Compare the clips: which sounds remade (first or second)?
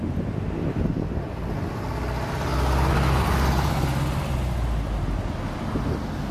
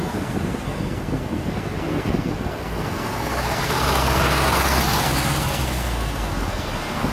second